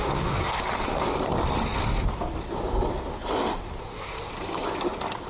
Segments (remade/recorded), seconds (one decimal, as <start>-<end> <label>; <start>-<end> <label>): 0.0-0.6 remade; 0.6-3.8 recorded; 3.8-4.3 remade; 4.3-5.3 recorded